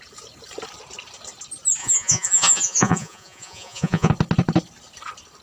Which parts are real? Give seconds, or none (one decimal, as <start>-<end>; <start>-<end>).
0.0-1.8; 4.1-5.4